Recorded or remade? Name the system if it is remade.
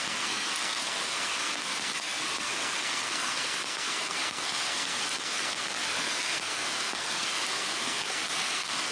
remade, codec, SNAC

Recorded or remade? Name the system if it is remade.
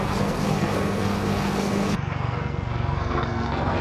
remade, codec, SNAC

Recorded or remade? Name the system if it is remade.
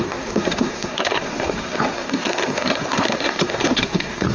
remade, codec, SNAC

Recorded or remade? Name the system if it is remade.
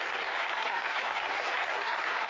remade, codec, SNAC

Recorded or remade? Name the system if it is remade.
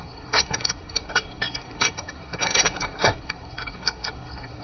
remade, codec, SNAC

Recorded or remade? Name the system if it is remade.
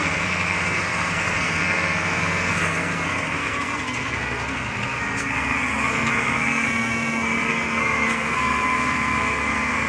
remade, codec, SNAC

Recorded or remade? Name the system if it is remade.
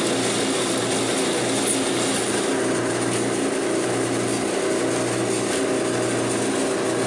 recorded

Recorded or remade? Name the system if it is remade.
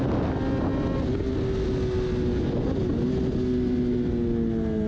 recorded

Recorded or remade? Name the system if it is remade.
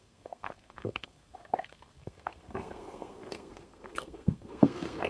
remade, codec, SNAC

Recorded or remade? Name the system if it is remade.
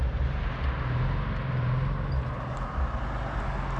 recorded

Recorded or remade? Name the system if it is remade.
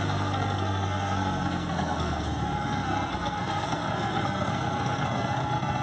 remade, codec, SNAC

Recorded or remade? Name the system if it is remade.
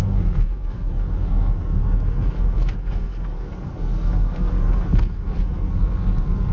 remade, codec, SNAC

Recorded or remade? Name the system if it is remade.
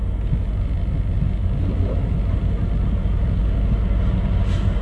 recorded